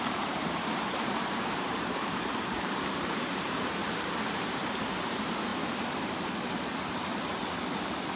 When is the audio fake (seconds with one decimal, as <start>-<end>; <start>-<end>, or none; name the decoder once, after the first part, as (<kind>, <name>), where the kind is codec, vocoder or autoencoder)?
0.0-3.8 (vocoder, BigVGAN v2); 4.3-5.5